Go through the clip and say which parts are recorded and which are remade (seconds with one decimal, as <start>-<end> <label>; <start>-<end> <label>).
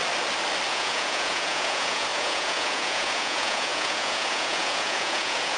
0.0-0.7 recorded; 0.7-5.6 remade